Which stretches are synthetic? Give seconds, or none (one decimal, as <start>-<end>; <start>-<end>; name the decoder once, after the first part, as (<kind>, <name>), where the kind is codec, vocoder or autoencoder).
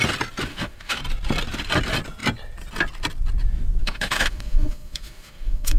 0.5-1.0 (autoencoder, DAC-VAE); 3.8-5.8